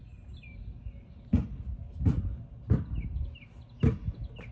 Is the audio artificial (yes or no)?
no